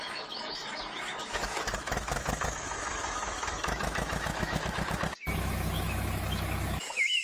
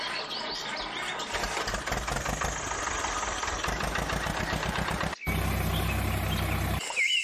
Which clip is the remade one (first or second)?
first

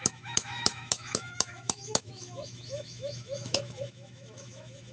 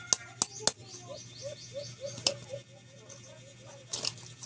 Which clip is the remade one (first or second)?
first